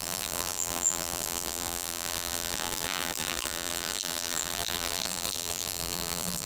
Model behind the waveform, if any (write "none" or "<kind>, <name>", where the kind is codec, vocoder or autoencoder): vocoder, BigVGAN v2